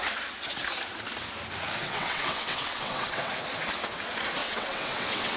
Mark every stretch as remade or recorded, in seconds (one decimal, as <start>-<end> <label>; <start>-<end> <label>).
0.0-1.8 recorded; 1.8-3.3 remade; 3.3-4.4 recorded; 4.4-5.4 remade